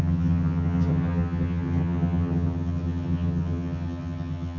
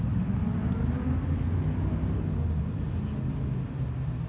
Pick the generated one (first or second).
first